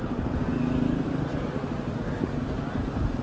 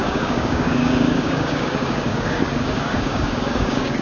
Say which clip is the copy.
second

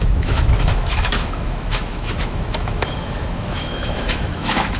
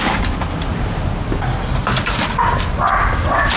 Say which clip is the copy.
first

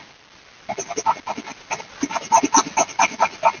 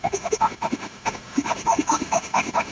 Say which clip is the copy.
second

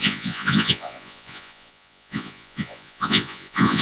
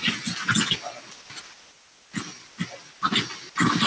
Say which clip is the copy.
first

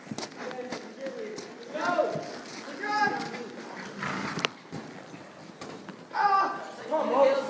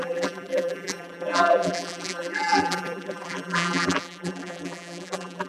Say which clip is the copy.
second